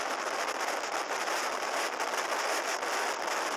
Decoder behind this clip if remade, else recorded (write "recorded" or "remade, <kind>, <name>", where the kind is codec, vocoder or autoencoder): recorded